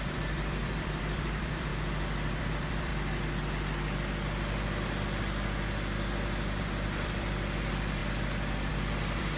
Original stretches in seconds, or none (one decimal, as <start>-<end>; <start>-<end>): 1.7-2.4; 2.9-6.6; 8.0-8.7